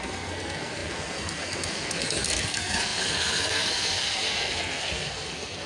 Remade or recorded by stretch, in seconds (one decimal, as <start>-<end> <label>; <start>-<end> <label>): 0.0-5.7 remade